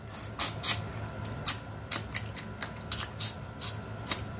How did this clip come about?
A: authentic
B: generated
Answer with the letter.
A